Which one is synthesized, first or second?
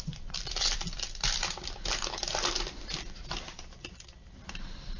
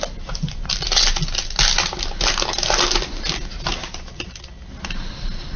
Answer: first